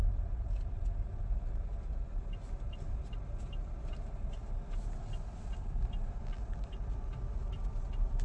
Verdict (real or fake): real